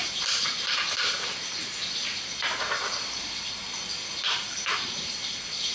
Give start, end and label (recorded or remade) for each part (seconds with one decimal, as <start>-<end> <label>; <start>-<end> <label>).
0.0-1.8 remade; 1.8-2.4 recorded; 2.4-3.6 remade; 3.6-4.2 recorded; 4.2-5.7 remade